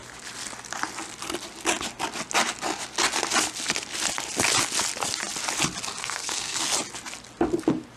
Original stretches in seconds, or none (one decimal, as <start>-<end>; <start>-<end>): 0.0-6.0; 6.6-8.0